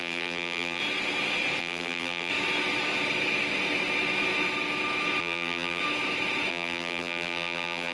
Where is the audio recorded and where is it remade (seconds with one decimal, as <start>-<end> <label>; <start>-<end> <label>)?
0.0-0.8 remade; 0.8-1.6 recorded; 1.6-2.3 remade; 2.3-5.2 recorded; 5.2-5.8 remade; 5.8-6.5 recorded; 6.5-7.9 remade